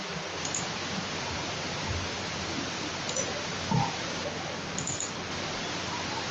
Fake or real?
real